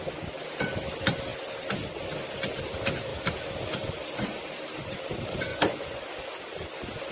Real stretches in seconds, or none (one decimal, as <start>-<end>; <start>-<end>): 0.0-5.5; 6.0-7.1

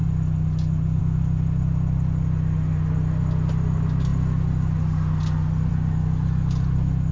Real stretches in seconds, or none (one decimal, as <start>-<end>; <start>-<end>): 0.0-7.1